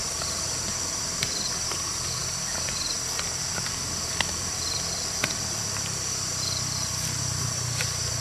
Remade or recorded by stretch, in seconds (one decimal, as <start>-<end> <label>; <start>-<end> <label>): 0.0-8.2 remade